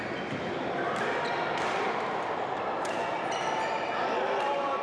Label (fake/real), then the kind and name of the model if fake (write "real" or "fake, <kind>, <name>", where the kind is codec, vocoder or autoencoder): real